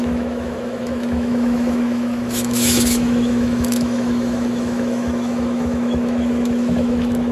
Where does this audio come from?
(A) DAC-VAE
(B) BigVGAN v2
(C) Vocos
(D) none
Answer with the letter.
A